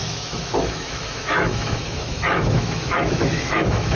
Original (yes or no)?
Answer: no